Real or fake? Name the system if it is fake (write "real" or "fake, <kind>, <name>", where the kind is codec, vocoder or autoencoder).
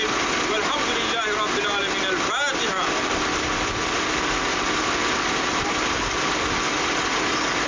real